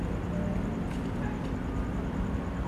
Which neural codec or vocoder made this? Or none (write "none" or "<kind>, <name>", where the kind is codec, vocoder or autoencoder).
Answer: none